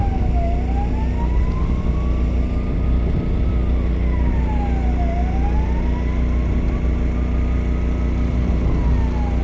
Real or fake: real